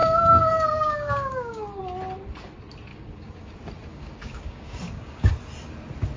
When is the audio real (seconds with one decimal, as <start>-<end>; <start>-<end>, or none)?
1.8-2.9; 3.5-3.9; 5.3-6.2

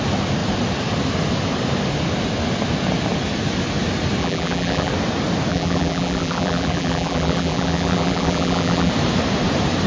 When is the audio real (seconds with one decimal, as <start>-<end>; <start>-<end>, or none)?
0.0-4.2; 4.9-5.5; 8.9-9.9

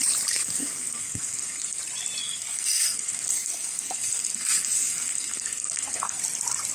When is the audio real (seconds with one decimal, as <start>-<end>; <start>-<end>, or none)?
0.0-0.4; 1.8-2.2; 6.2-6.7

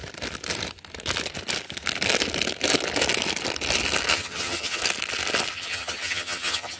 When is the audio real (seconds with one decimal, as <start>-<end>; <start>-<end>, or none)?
0.0-4.1; 4.8-5.5